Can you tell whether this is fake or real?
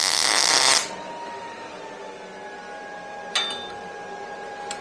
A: real